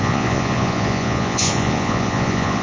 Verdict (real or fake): fake